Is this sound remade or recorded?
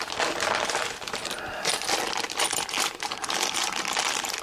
remade